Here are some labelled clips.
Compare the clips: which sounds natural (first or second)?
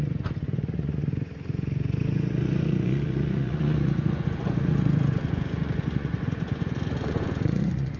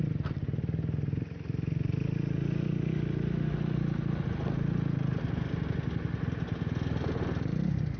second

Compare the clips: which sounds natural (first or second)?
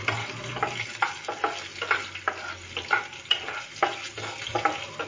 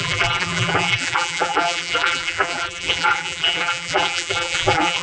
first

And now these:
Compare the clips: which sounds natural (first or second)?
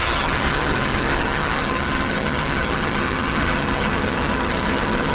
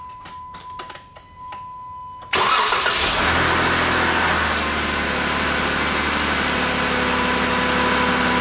second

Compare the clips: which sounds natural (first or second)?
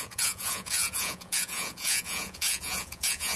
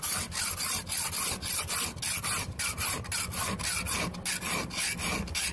second